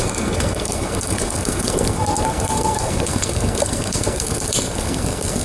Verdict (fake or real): fake